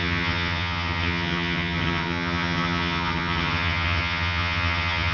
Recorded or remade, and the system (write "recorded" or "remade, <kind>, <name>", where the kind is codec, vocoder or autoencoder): remade, vocoder, HiFi-GAN